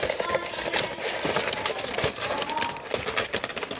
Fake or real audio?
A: real